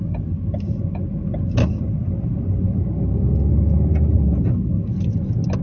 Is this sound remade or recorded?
recorded